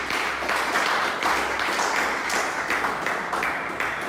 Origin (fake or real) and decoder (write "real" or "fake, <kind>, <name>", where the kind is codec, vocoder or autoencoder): real